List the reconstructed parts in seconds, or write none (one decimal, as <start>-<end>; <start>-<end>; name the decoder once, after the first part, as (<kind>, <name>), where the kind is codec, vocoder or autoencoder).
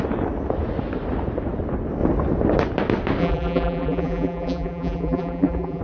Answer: 3.2-5.8 (vocoder, BigVGAN v2)